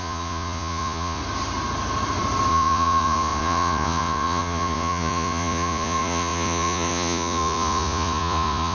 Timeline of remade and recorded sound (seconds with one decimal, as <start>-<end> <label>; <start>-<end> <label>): 0.0-1.2 remade; 1.2-2.5 recorded; 2.5-8.7 remade